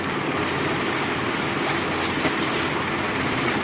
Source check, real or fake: real